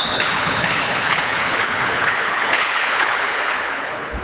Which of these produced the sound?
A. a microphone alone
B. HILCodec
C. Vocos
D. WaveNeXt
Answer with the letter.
B